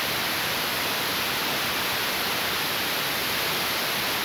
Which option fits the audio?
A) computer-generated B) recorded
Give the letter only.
B